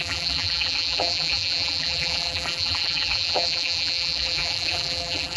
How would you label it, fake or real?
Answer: fake